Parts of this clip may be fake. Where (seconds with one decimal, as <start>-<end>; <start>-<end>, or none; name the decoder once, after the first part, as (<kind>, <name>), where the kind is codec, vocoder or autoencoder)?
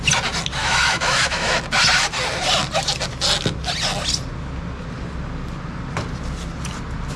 0.6-1.6 (autoencoder, DAC-VAE)